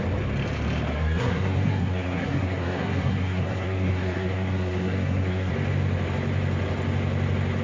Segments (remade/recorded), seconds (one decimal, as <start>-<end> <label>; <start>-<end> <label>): 0.0-0.9 recorded; 0.9-5.5 remade; 5.5-7.6 recorded